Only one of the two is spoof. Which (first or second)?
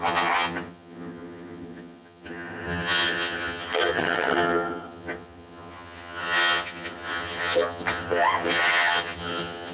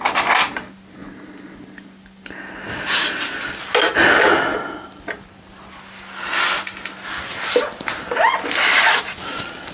first